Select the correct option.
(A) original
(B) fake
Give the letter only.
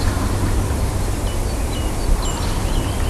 A